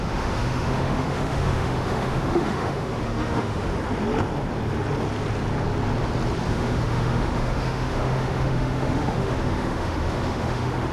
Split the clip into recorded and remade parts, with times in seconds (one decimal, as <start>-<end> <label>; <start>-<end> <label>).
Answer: 0.0-3.7 remade; 3.7-6.5 recorded; 6.5-10.9 remade